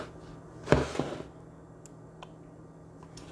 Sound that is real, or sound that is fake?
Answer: real